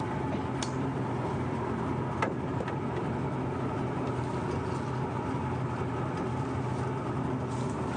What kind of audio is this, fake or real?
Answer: real